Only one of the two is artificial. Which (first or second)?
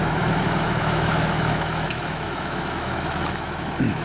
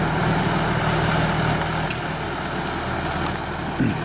first